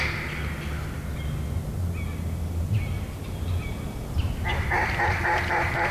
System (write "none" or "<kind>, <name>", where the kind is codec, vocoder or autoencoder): none